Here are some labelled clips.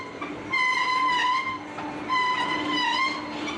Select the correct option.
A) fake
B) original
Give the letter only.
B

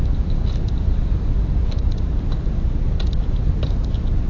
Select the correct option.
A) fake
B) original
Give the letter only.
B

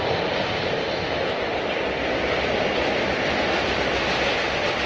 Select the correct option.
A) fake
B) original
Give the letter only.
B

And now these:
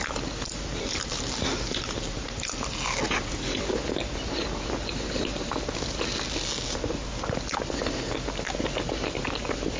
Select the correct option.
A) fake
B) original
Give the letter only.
B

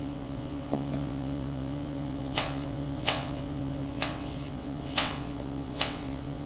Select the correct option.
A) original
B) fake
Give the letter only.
B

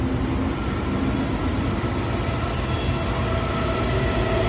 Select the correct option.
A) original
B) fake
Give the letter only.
A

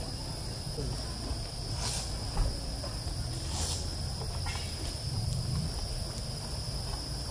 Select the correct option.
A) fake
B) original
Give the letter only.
B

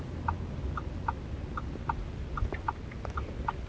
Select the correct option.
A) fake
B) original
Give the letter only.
B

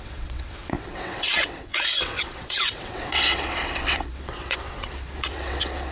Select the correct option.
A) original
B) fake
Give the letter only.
B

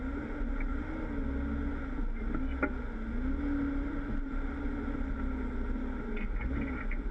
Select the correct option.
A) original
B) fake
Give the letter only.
A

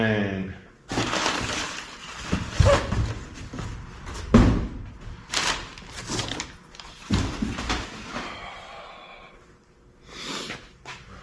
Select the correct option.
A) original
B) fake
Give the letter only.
A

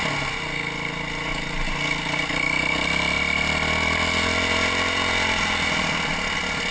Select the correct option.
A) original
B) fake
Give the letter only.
A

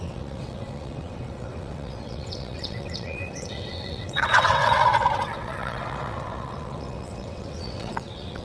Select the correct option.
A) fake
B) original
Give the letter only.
A